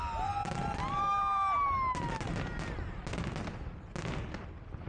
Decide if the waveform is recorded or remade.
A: recorded